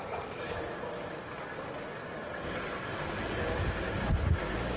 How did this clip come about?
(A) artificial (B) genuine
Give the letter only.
B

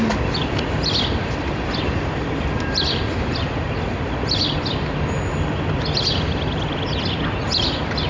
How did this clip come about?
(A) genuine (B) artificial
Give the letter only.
A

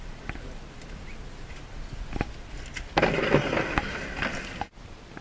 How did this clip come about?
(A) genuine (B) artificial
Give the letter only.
A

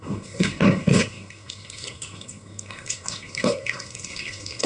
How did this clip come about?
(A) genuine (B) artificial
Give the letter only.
B